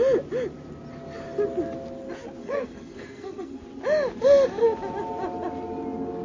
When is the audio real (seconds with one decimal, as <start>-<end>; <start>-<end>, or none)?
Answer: 0.0-2.4; 3.6-6.2